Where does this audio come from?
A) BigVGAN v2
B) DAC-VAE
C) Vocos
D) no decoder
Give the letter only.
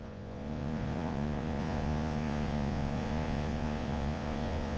C